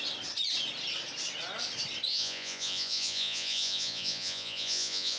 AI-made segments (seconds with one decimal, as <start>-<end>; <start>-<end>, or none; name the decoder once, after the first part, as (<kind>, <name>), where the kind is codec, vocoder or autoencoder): 2.1-5.2 (vocoder, Vocos)